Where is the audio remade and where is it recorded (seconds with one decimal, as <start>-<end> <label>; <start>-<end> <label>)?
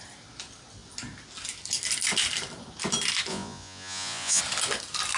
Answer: 0.0-3.3 recorded; 3.3-4.4 remade; 4.4-5.2 recorded